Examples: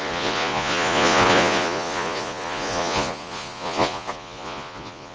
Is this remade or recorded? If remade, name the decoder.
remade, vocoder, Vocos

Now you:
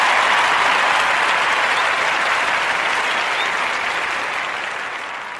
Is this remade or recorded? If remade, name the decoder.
recorded